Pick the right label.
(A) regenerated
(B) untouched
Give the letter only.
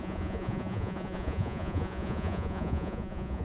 A